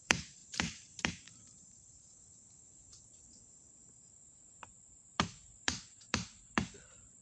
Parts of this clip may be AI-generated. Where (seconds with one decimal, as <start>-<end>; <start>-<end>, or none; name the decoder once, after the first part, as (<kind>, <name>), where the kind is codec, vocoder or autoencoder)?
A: 0.0-7.2 (vocoder, BigVGAN v2)